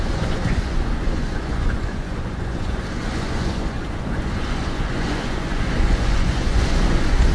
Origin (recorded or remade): remade